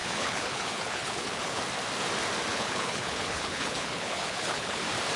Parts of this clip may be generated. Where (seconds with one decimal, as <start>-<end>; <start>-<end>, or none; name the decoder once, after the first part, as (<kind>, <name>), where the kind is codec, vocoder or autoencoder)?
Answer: 0.0-1.6 (codec, HILCodec); 2.5-4.8